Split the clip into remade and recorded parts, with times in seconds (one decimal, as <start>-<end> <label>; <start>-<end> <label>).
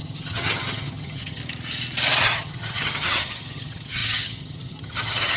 0.0-1.4 remade; 1.4-2.2 recorded; 2.2-5.4 remade